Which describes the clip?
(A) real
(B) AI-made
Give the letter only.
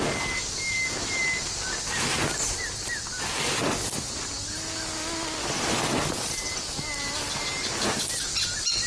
A